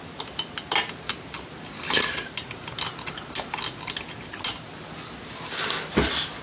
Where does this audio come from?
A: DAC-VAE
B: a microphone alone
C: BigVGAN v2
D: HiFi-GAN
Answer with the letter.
B